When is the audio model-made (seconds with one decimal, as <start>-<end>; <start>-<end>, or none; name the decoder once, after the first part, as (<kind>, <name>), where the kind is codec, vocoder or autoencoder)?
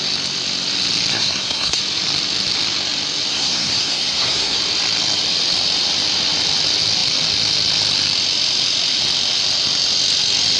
1.1-1.8 (codec, SNAC); 3.3-4.6